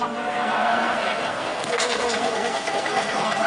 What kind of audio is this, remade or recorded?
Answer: remade